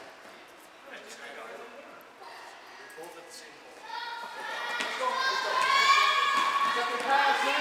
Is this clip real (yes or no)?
yes